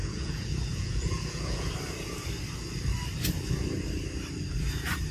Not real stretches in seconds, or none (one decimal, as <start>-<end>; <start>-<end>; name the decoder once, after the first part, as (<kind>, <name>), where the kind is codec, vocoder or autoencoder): 0.0-1.7 (vocoder, Vocos)